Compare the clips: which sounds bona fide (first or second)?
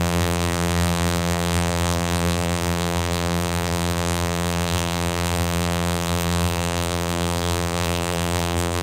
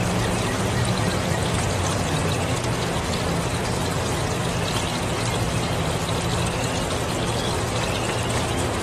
second